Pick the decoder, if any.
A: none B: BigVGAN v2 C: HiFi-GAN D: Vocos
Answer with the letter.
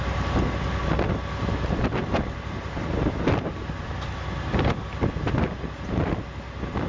A